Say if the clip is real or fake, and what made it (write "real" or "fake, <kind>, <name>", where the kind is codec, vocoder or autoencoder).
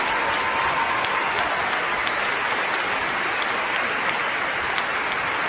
real